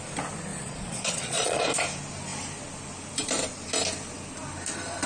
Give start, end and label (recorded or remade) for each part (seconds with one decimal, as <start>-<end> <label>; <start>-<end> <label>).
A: 0.0-0.5 recorded; 0.5-1.6 remade; 1.6-5.1 recorded